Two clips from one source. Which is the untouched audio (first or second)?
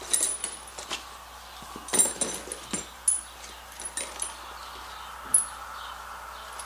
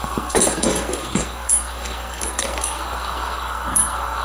first